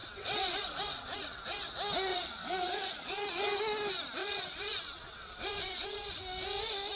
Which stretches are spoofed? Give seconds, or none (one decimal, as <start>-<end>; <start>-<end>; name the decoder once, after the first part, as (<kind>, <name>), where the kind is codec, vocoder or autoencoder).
0.0-1.7 (vocoder, WaveNeXt); 2.1-3.6; 4.2-6.2